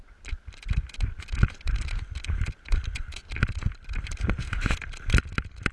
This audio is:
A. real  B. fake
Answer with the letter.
A